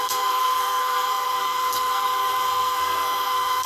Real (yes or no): no